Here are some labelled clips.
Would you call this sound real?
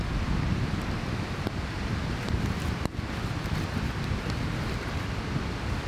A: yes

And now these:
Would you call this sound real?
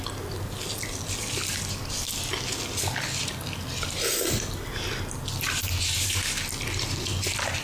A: yes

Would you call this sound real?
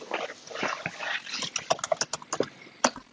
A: yes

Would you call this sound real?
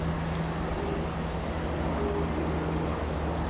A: yes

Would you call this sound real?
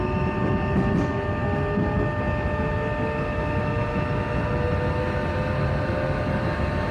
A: yes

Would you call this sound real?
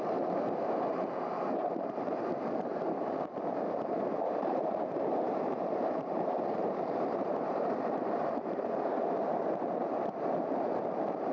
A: no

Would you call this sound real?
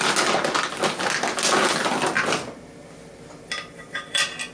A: yes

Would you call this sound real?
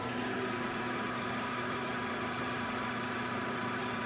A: no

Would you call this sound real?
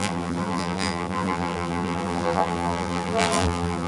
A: no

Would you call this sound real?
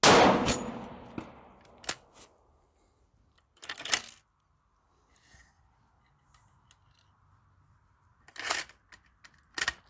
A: yes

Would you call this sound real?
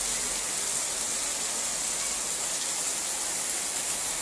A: yes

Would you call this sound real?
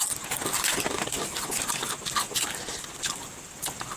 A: yes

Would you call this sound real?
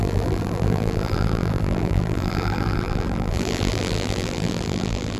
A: no